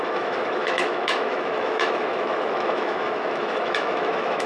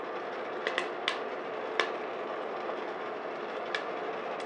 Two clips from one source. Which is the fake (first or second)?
first